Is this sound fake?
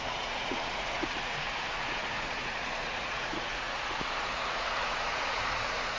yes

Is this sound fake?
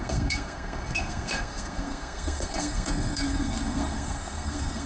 yes